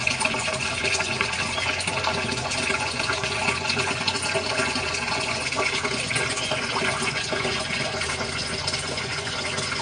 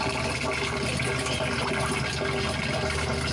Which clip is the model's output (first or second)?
first